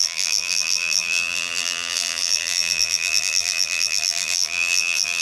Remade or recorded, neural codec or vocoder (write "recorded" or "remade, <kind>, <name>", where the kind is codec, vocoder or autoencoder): remade, vocoder, BigVGAN v2